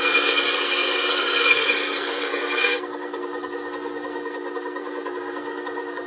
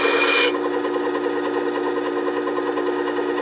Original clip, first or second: second